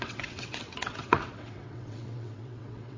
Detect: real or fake fake